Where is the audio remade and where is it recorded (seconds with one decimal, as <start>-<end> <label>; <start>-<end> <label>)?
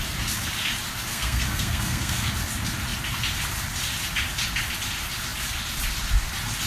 0.0-1.1 recorded; 1.1-2.3 remade; 2.3-6.7 recorded